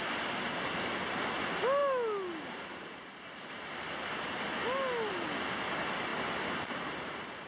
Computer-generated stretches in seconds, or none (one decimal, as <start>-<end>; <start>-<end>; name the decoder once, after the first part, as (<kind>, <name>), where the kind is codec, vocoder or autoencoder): none